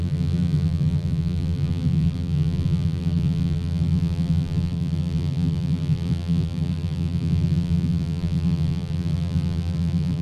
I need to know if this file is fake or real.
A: fake